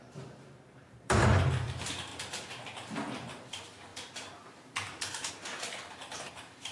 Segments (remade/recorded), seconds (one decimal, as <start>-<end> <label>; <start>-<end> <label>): 0.0-6.7 remade